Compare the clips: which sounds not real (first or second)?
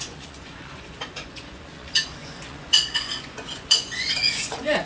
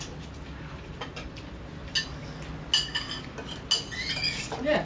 first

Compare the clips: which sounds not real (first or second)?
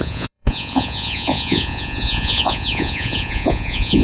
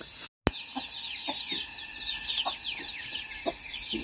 first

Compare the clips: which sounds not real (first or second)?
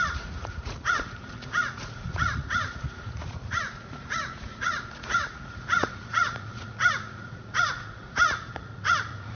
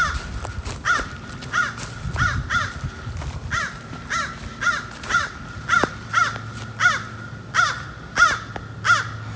first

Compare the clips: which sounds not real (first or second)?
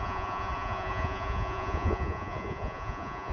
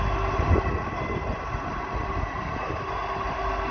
first